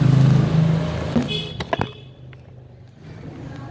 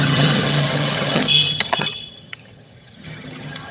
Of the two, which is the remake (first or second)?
second